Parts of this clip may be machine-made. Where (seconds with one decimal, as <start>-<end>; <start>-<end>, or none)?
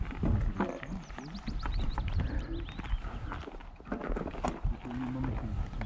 none